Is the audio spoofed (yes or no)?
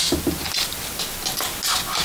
no